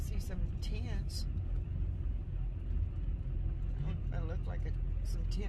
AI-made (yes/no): no